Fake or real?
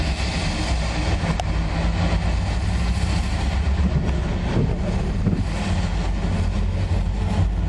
real